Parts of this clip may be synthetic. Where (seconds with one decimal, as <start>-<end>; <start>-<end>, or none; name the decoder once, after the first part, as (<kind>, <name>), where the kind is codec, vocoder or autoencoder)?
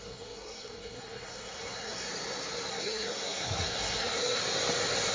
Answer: 0.0-2.1 (codec, SNAC); 2.7-4.4